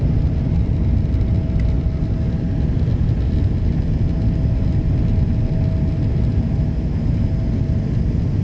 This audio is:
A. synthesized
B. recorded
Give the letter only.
B